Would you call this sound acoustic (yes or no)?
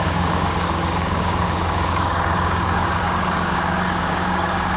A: no